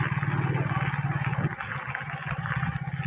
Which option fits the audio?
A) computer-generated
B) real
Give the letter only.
B